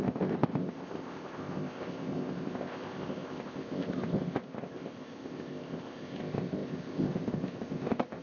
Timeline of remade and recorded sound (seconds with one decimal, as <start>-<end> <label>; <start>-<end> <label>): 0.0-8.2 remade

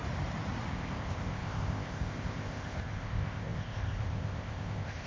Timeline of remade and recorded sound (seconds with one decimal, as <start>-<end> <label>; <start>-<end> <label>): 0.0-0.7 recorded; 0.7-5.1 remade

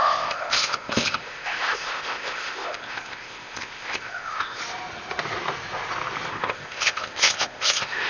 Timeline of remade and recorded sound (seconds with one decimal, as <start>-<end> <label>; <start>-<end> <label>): 0.0-4.6 remade; 4.6-6.3 recorded; 6.3-8.1 remade

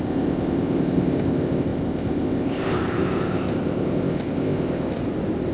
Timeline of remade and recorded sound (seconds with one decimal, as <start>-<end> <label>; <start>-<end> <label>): 0.0-5.0 remade; 5.0-5.5 recorded

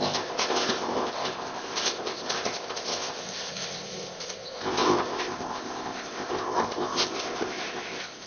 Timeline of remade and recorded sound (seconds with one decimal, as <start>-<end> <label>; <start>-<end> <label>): 0.0-8.3 remade